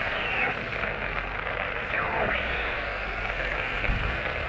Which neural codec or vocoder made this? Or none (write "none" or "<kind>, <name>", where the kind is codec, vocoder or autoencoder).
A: codec, SNAC